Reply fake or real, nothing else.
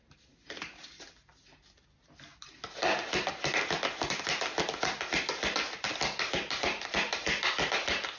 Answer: real